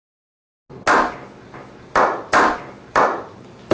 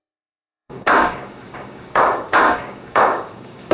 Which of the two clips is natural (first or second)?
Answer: first